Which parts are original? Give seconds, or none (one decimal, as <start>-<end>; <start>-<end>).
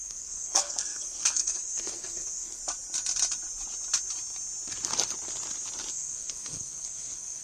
2.6-5.9